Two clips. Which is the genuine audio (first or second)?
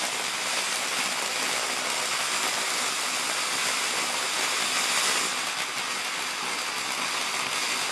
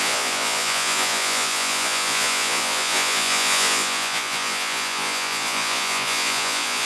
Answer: first